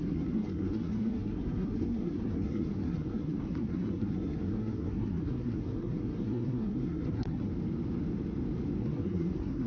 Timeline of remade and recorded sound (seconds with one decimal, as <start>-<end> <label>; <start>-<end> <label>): 0.0-7.5 remade; 7.5-8.8 recorded; 8.8-9.7 remade